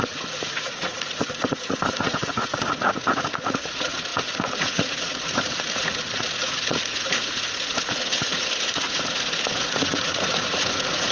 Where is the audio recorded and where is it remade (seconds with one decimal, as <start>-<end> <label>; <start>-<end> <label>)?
0.0-11.1 remade